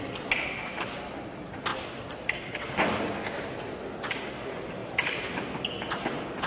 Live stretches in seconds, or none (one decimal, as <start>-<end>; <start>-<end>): 0.0-4.8; 5.4-6.5